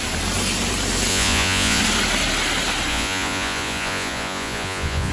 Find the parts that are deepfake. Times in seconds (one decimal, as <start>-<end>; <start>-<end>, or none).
1.1-1.8; 2.9-5.1